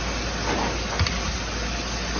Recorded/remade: recorded